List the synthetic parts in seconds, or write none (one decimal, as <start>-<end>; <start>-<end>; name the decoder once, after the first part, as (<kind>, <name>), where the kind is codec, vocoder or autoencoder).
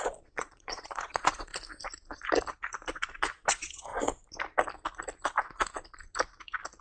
0.0-1.5 (vocoder, Vocos); 3.5-3.9